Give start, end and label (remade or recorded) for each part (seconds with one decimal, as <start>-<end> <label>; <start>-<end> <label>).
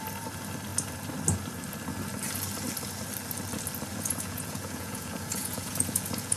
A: 0.0-3.9 recorded; 3.9-6.4 remade